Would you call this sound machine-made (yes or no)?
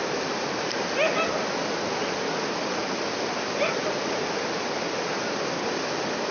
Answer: no